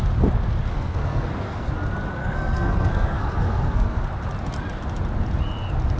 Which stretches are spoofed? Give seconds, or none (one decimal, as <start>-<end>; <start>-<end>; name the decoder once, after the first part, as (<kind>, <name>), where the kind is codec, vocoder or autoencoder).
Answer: 0.7-1.7 (codec, SNAC); 2.2-4.0